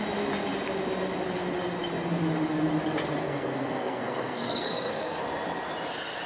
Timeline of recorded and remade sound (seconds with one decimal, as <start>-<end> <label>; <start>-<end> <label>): 0.0-3.2 recorded; 3.2-5.2 remade; 5.2-6.3 recorded